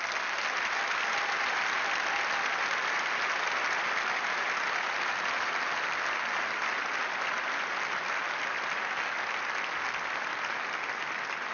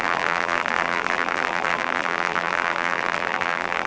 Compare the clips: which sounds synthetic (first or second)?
second